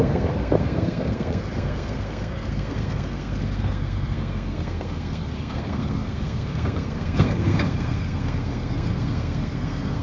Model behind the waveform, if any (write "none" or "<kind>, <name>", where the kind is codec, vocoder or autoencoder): codec, SNAC